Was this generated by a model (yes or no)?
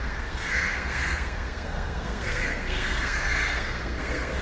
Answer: yes